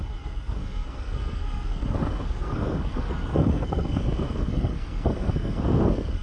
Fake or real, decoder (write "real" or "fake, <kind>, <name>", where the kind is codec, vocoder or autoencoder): fake, codec, SNAC